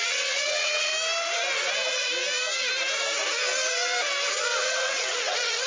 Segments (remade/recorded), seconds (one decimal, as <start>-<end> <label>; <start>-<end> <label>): 0.0-0.9 remade; 0.9-4.3 recorded; 4.3-5.7 remade